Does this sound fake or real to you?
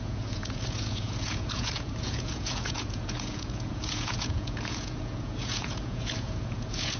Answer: fake